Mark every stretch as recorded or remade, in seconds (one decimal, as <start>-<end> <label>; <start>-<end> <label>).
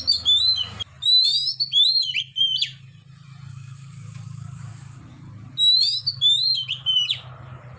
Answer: 0.0-3.5 recorded; 3.5-5.0 remade; 5.0-7.8 recorded